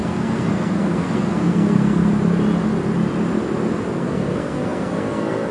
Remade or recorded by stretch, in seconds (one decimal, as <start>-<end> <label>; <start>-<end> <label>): 0.0-2.1 remade; 2.1-3.9 recorded; 3.9-5.5 remade